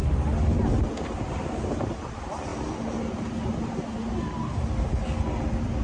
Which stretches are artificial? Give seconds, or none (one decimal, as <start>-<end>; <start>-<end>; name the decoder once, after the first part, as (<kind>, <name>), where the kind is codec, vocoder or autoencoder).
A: none

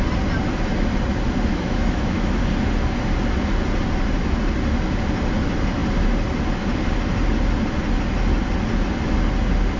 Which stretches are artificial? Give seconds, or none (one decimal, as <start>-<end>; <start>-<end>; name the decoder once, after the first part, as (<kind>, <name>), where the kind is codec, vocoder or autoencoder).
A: 1.5-2.4 (autoencoder, DAC-VAE)

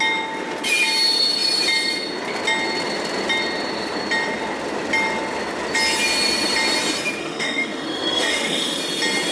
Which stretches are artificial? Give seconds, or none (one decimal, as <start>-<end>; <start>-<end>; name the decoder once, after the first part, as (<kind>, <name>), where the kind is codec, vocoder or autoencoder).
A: 7.2-8.8 (autoencoder, DAC-VAE)

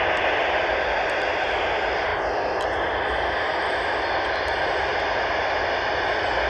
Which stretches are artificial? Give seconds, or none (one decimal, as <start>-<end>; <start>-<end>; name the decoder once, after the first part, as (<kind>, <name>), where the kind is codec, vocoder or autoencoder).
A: none

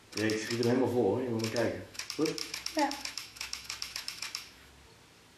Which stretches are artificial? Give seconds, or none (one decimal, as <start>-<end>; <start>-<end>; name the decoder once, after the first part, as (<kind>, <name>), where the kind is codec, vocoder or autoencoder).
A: 0.4-2.0 (autoencoder, DAC-VAE); 2.4-4.7

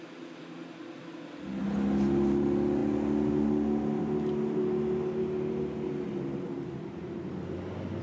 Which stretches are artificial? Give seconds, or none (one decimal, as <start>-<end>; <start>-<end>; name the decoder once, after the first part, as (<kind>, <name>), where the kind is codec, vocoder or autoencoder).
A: none

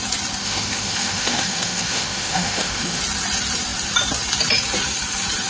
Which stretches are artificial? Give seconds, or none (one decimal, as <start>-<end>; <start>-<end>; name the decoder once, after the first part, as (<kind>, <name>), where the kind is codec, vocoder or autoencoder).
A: 0.4-3.0 (autoencoder, DAC-VAE)

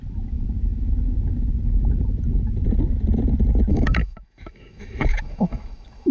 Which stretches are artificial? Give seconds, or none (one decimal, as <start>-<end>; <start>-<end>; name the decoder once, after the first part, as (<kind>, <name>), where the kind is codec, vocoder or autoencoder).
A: 3.7-6.1 (autoencoder, DAC-VAE)